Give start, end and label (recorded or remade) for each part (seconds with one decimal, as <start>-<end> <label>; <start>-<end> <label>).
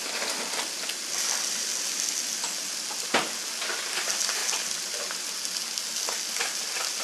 0.0-7.0 recorded